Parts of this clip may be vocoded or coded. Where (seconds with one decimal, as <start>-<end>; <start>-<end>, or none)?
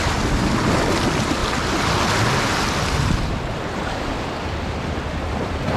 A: none